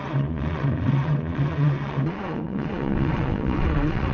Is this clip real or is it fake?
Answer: fake